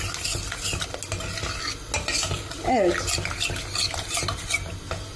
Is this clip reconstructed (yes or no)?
no